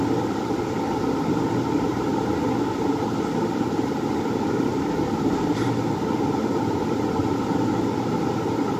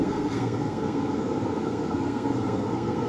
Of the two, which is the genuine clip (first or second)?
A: first